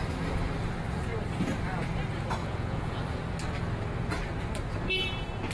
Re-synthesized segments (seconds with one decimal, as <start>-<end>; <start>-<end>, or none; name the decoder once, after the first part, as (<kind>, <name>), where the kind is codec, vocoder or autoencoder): 2.4-3.0 (vocoder, Vocos)

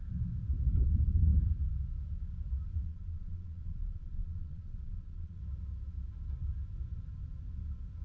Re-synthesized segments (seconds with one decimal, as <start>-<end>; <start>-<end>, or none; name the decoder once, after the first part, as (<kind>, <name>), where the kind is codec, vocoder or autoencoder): 2.9-5.4 (vocoder, Vocos)

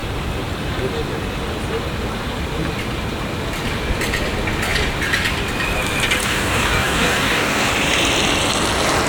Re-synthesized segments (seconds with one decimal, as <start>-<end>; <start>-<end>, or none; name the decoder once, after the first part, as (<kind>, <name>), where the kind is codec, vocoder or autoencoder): 6.2-7.7 (codec, DAC)

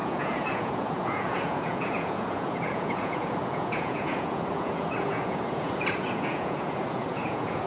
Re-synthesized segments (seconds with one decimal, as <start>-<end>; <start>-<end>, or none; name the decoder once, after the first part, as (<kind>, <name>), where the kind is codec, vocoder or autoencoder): 0.0-7.7 (vocoder, Vocos)

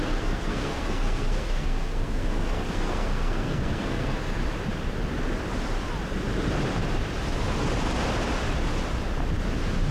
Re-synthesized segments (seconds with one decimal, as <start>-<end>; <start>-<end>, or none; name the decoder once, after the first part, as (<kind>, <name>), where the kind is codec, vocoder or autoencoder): 0.0-4.4 (codec, SNAC)